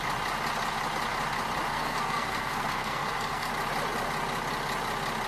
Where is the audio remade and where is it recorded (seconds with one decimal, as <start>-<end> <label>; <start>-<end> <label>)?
0.0-1.7 recorded; 1.7-3.5 remade; 3.5-5.3 recorded